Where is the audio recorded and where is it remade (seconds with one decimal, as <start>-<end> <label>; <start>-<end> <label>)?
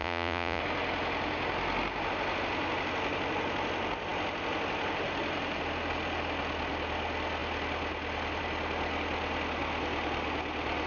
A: 0.0-0.6 remade; 0.6-10.9 recorded